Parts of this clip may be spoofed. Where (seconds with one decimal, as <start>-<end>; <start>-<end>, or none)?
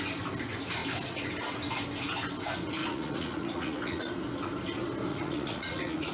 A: 2.8-4.1; 5.1-6.1